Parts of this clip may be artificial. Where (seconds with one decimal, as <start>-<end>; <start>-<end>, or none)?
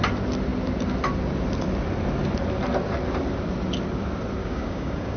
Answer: 4.4-5.2